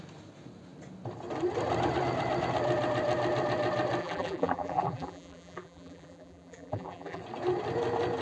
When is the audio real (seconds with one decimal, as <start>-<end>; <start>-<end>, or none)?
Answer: 0.0-4.0; 7.2-8.2